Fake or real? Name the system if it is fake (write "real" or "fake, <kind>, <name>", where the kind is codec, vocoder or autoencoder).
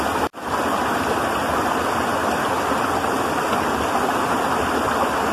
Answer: real